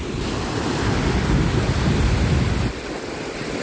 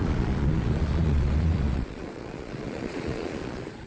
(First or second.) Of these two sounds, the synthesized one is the second